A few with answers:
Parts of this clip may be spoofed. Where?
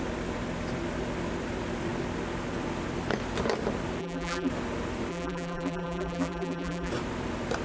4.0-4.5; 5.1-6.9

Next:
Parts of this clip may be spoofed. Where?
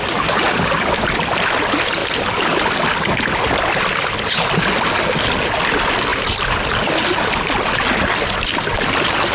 none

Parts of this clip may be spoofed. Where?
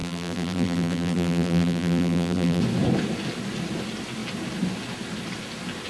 0.0-2.6